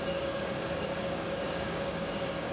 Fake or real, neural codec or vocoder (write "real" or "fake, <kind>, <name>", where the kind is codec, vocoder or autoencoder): fake, codec, DAC